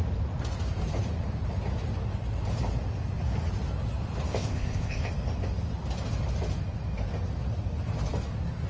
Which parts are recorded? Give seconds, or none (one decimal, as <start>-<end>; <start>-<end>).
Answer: 0.0-4.3; 5.1-8.7